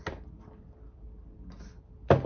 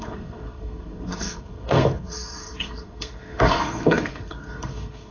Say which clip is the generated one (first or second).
second